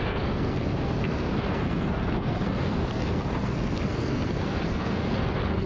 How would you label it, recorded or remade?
remade